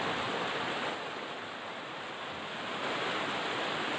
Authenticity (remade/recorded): recorded